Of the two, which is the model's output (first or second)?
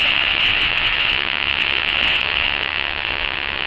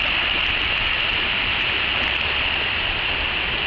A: first